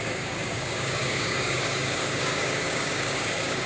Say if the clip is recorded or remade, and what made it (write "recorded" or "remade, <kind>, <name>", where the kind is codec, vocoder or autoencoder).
remade, codec, DAC